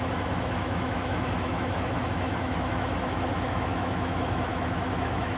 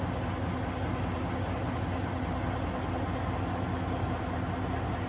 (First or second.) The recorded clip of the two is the second